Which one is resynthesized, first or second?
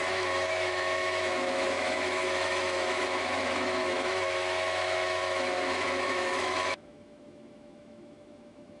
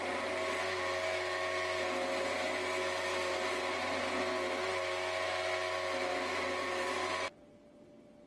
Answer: first